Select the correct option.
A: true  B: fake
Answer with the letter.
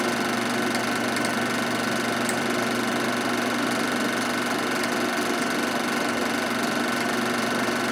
A